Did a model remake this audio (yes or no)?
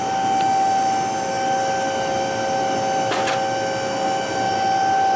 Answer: no